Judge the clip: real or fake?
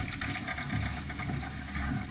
real